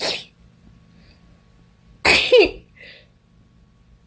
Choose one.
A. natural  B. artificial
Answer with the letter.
A